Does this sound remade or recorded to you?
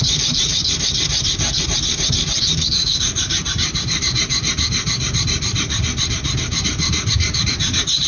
remade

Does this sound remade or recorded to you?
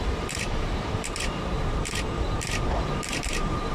remade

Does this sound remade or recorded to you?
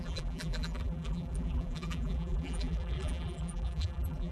remade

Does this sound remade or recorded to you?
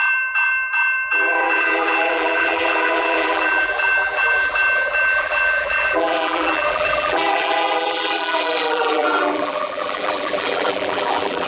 remade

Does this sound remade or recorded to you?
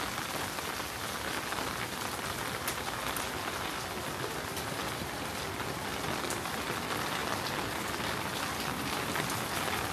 recorded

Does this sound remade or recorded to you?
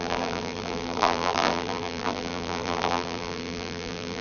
remade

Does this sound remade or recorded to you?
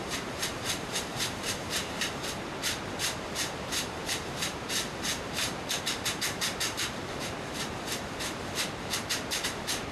remade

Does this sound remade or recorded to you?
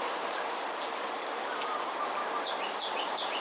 remade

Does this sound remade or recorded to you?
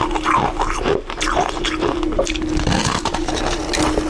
recorded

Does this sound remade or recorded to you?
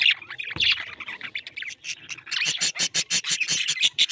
remade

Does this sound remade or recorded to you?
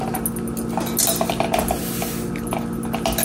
recorded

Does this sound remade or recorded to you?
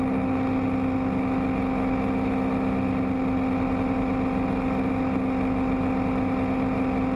recorded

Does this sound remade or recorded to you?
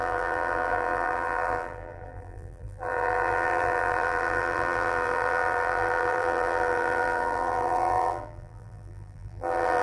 remade